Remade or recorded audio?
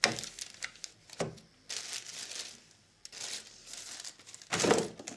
recorded